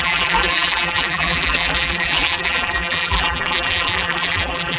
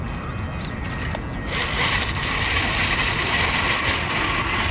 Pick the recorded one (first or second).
second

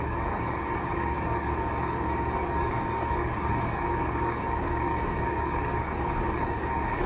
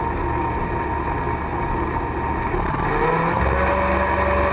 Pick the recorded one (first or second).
second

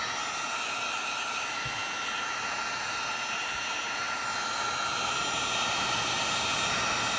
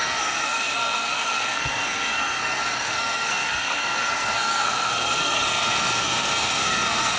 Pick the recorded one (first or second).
first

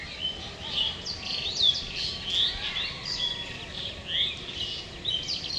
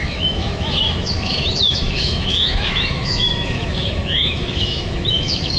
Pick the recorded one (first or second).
first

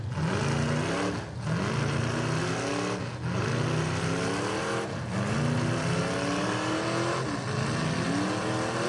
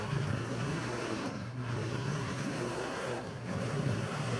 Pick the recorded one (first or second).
first